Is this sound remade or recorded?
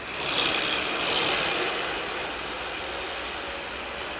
recorded